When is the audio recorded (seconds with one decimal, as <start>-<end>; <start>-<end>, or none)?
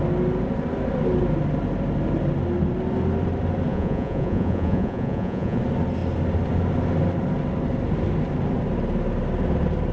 0.0-3.7; 5.6-9.9